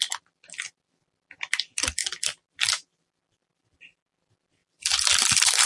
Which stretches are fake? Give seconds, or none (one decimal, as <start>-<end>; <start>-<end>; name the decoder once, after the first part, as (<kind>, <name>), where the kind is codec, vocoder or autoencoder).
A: none